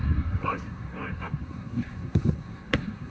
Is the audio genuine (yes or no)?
no